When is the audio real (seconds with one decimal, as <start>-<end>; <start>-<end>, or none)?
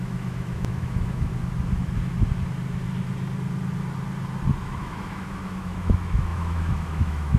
1.3-4.6